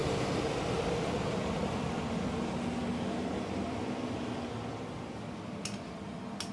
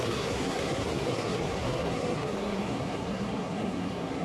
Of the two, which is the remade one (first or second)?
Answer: second